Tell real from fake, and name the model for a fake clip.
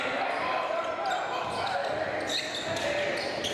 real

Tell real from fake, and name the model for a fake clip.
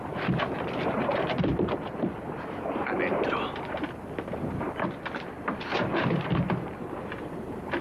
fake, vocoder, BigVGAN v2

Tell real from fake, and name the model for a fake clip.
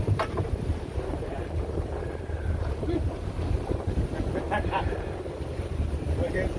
fake, vocoder, BigVGAN v2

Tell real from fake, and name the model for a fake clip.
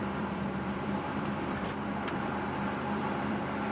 fake, vocoder, BigVGAN v2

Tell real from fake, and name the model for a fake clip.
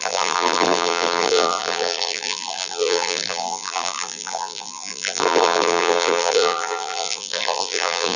fake, vocoder, BigVGAN v2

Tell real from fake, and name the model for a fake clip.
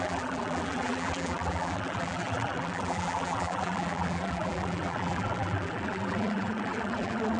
fake, vocoder, BigVGAN v2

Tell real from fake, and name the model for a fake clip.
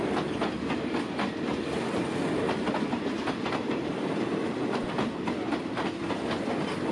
real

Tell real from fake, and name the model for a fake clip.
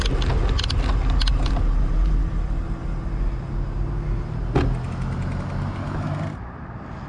real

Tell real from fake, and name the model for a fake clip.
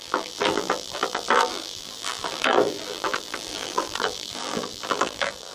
fake, vocoder, BigVGAN v2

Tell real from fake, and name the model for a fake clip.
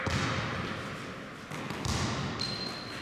real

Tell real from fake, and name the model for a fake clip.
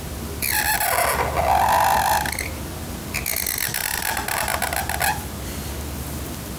real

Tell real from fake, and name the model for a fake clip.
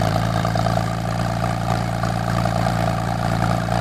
fake, vocoder, BigVGAN v2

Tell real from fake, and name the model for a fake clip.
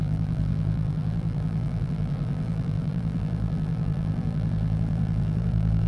fake, vocoder, BigVGAN v2